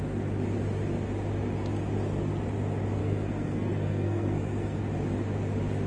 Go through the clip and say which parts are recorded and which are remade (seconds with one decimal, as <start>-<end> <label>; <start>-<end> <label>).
0.0-3.0 recorded; 3.0-4.8 remade; 4.8-5.9 recorded